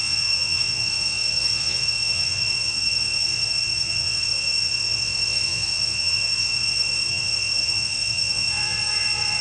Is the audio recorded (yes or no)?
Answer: no